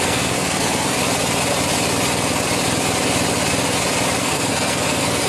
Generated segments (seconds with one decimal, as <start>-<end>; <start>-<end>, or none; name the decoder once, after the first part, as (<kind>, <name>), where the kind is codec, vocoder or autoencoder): 0.0-1.0 (codec, SNAC); 4.2-5.3